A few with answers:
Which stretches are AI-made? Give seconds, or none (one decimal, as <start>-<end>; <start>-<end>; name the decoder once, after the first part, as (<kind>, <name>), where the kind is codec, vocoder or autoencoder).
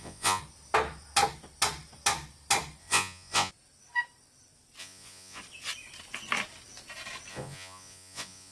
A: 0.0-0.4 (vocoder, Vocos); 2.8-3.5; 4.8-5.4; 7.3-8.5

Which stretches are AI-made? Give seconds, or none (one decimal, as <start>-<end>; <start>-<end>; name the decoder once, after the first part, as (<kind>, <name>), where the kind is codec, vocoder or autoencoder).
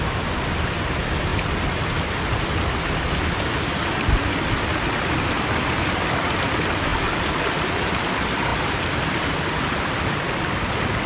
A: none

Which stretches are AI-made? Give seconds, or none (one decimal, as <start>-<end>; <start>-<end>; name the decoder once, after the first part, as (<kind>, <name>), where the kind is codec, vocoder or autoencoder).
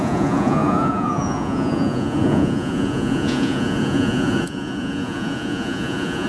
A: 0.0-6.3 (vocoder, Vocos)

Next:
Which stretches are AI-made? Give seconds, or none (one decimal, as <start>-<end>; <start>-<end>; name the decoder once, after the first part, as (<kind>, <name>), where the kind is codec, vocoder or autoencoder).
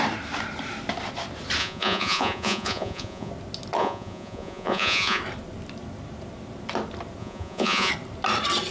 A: 1.6-3.3 (vocoder, Vocos); 3.8-5.2; 7.2-7.9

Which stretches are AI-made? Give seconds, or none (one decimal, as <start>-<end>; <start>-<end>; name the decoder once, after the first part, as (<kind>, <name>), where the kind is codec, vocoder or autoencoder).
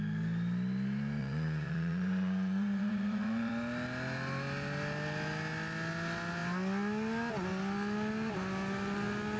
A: 1.2-3.5 (vocoder, Vocos)